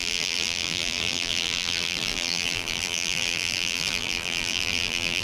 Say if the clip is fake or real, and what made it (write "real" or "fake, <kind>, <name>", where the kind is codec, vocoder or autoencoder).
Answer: fake, vocoder, BigVGAN v2